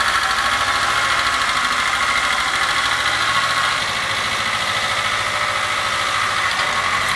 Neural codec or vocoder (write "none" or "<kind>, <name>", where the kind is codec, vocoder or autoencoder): none